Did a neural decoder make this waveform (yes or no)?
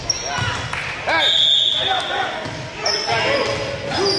no